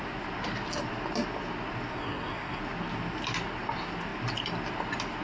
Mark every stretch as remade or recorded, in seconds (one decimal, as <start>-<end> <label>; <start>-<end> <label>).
0.0-1.9 recorded; 1.9-2.6 remade; 2.6-5.2 recorded